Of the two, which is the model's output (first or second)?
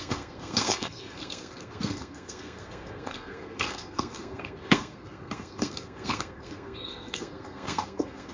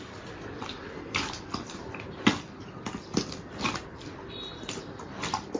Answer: first